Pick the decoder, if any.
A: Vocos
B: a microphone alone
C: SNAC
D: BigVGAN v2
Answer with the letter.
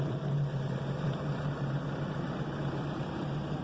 D